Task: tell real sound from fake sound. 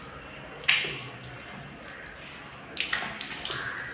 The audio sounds real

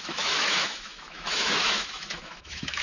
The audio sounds fake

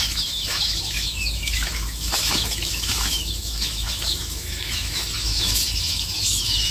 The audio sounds fake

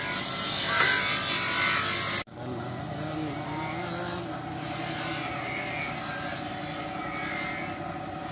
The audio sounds real